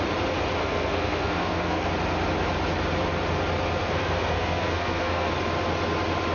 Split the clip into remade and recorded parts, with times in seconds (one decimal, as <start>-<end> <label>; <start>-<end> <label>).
0.0-0.6 recorded; 0.6-1.9 remade; 1.9-3.8 recorded; 3.8-5.3 remade; 5.3-6.3 recorded